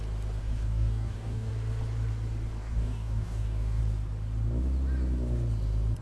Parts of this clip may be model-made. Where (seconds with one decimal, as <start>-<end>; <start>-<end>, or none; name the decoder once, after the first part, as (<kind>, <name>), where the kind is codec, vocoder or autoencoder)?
0.4-1.5 (codec, DAC); 2.6-3.8